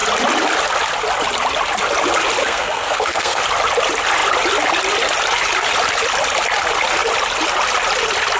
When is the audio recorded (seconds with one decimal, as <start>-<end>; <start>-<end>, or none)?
0.0-2.4; 3.4-8.4